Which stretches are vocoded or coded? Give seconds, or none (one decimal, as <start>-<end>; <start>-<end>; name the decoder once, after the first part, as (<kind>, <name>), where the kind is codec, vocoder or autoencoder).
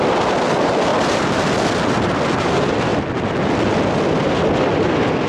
none